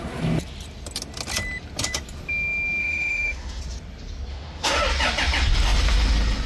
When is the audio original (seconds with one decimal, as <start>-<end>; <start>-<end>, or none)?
0.0-2.8; 3.6-4.3; 4.8-6.5